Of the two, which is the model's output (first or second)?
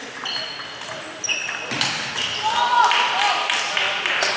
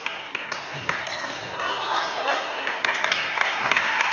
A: second